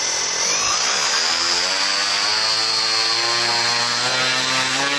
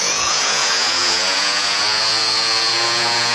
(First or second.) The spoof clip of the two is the second